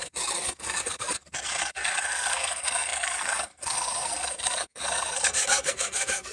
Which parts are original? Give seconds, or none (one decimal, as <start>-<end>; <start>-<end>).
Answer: none